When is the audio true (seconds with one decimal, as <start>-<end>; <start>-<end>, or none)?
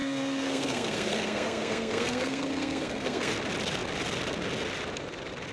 3.3-5.5